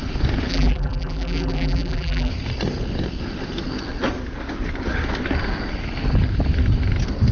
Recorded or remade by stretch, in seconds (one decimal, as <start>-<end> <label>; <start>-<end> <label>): 0.0-0.5 recorded; 0.5-2.3 remade; 2.3-7.3 recorded